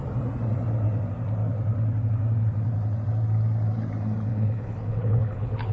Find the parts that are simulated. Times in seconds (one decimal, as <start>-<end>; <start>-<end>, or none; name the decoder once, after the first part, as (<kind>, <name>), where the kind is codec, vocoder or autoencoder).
4.3-5.7 (codec, HILCodec)